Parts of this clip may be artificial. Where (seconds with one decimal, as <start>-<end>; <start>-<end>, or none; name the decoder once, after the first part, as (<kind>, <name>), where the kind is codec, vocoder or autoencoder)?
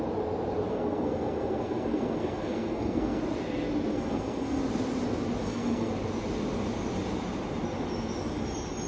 0.7-3.2 (codec, SNAC); 3.9-4.6; 5.4-5.9